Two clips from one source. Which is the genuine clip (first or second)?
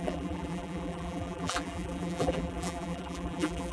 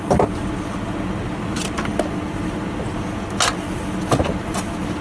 second